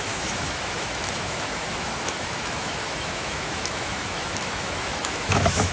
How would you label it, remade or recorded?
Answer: remade